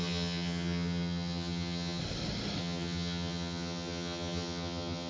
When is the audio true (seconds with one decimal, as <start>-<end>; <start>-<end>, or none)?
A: 2.0-2.6